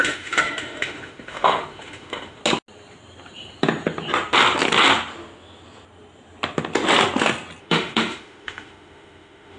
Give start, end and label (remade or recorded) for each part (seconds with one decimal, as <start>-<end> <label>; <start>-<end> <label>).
0.0-2.4 remade; 2.4-7.6 recorded; 7.6-9.6 remade